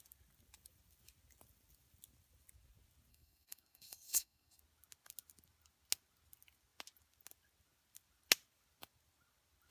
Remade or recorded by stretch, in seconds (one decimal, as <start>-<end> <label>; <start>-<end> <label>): 0.0-3.1 recorded; 3.1-4.6 remade; 4.6-9.7 recorded